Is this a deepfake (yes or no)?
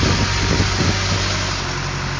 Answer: no